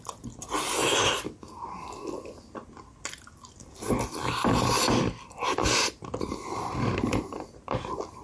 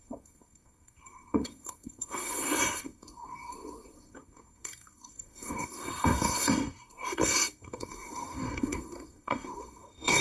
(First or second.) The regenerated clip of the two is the second